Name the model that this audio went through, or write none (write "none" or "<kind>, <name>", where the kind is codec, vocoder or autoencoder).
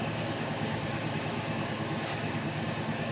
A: codec, DAC